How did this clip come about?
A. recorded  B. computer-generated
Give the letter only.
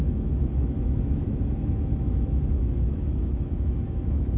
B